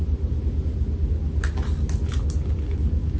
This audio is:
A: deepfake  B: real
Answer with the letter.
B